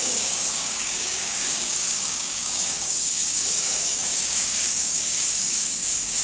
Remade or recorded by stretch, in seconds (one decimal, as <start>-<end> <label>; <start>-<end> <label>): 0.0-6.2 remade